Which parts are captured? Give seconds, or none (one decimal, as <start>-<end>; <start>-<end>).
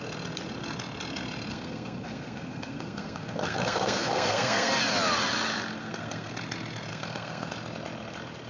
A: 0.0-1.5; 4.7-5.8; 6.3-6.9; 7.5-8.5